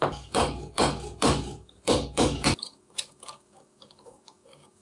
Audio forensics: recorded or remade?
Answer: remade